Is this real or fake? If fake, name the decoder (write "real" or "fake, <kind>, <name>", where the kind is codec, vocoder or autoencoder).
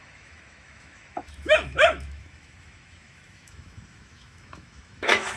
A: fake, autoencoder, DAC-VAE